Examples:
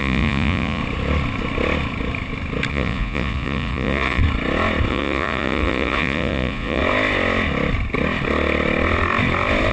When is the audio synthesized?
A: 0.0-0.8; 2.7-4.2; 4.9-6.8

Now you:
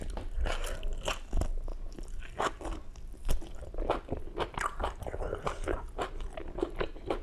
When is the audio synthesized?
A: none

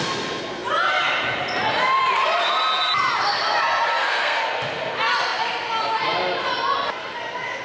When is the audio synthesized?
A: 3.9-4.4

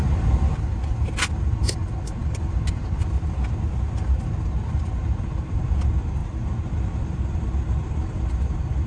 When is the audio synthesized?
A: none

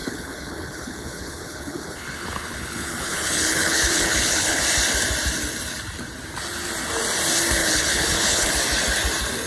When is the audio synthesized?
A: 0.0-4.6; 7.6-8.5

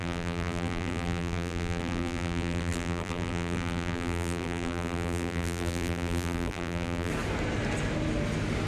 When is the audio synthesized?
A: 0.0-7.1

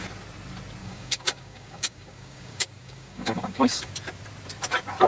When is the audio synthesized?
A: 0.8-3.9

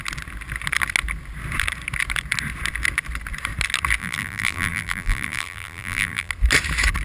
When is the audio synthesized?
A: 4.0-6.3